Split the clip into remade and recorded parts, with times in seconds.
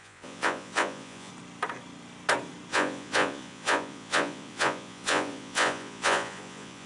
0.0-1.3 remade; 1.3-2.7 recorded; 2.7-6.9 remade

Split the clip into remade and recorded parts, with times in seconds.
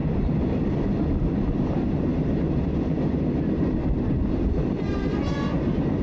0.0-6.0 recorded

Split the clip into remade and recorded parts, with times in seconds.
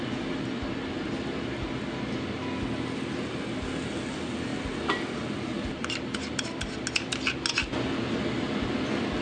0.0-9.2 recorded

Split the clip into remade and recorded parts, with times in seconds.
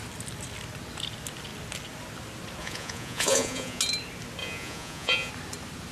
0.0-2.6 recorded; 2.6-3.8 remade; 3.8-4.4 recorded; 4.4-5.3 remade; 5.3-5.9 recorded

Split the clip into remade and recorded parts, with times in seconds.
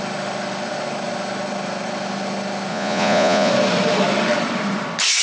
0.0-2.7 recorded; 2.7-3.5 remade; 3.5-5.2 recorded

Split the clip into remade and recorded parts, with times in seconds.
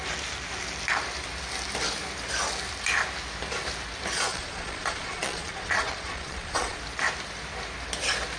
0.0-4.3 recorded; 4.3-6.8 remade; 6.8-8.4 recorded